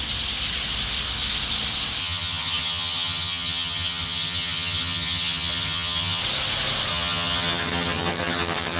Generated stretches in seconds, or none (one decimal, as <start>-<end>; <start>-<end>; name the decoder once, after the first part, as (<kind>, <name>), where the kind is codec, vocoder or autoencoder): 2.0-6.2 (vocoder, HiFi-GAN); 6.9-8.8